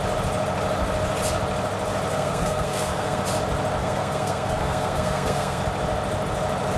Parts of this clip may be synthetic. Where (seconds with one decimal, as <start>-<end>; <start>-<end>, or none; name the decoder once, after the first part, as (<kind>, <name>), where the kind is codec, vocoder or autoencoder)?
2.1-3.2 (codec, SNAC); 3.8-5.6